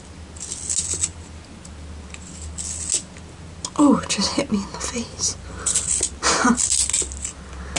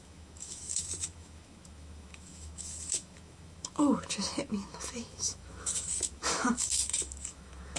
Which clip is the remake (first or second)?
second